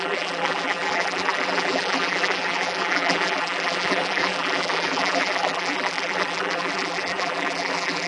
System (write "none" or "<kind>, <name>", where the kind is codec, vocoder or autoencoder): vocoder, BigVGAN v2